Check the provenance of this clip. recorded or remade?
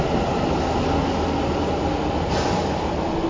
recorded